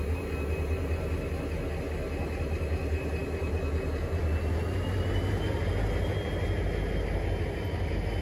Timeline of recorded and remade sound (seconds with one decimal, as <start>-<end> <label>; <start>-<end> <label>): 0.0-8.2 recorded